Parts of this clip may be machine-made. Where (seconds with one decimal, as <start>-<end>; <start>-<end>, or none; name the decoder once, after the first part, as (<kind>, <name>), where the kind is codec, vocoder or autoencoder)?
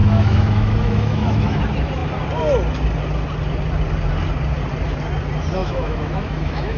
0.0-1.6 (autoencoder, DAC-VAE); 5.6-6.8